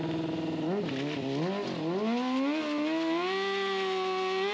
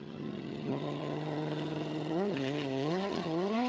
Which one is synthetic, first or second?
second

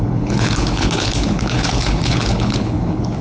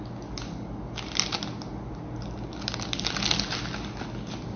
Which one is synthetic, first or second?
first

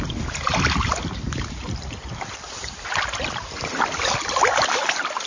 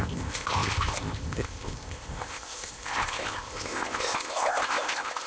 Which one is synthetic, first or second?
second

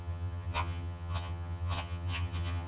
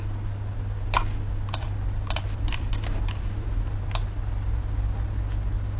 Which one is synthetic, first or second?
first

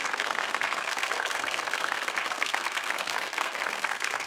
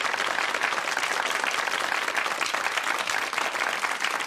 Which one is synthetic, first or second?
first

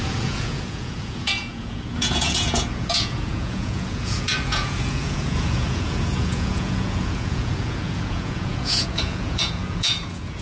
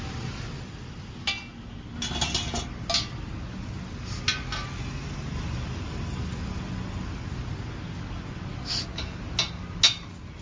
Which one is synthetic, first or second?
first